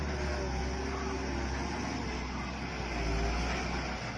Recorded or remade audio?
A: recorded